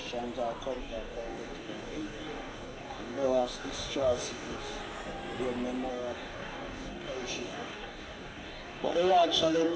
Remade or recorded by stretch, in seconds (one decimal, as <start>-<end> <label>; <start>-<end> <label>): 0.0-0.8 recorded; 0.8-4.8 remade; 4.8-5.9 recorded; 5.9-9.8 remade